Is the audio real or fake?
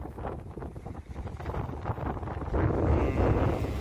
real